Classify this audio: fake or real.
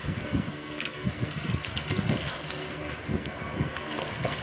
fake